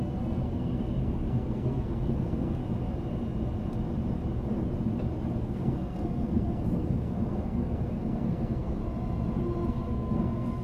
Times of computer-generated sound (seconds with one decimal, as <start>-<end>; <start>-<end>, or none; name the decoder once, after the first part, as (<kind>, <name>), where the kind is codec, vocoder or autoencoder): 0.0-2.6 (codec, SNAC); 5.4-8.8; 9.7-10.6